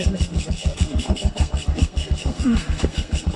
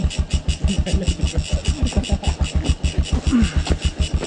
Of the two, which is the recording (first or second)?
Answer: second